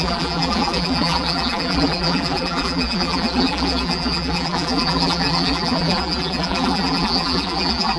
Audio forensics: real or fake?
fake